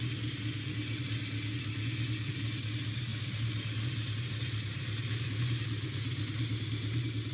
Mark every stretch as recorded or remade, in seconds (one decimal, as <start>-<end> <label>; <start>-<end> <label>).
0.0-7.3 recorded